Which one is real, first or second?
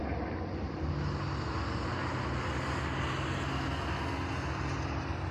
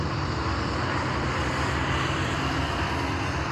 first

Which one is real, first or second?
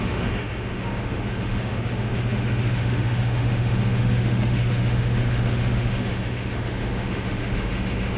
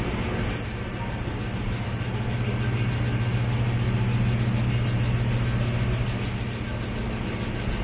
second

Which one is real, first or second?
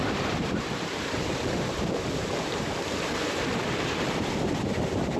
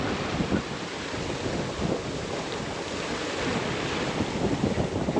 second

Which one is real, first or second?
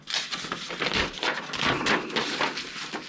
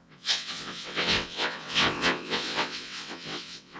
first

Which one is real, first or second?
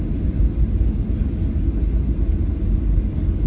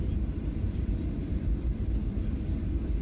first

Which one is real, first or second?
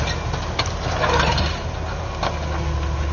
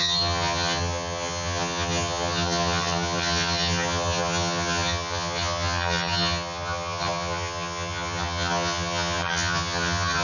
first